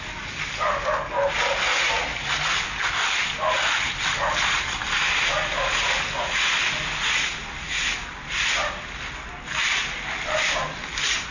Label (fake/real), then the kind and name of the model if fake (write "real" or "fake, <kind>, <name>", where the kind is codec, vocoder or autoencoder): real